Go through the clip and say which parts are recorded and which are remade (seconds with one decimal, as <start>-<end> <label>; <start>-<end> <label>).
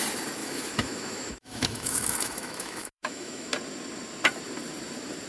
0.0-0.4 recorded; 0.4-3.5 remade; 3.5-5.3 recorded